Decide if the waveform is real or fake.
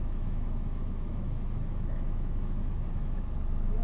fake